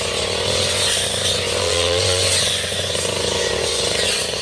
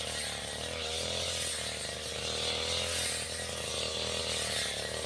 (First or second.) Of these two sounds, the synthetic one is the first